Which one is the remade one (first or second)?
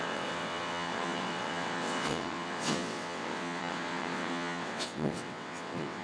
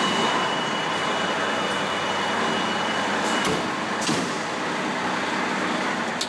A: first